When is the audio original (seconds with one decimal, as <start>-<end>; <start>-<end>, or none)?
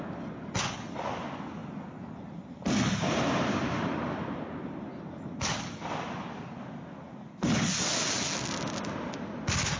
0.0-9.8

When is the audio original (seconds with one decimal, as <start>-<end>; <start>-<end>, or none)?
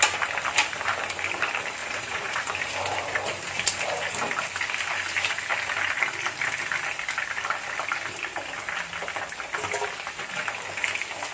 0.0-1.8; 2.4-11.3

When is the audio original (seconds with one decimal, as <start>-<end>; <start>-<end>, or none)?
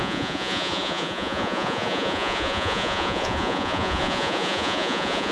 none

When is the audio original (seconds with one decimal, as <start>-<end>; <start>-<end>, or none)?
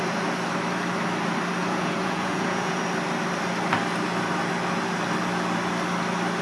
0.0-1.6; 2.8-6.4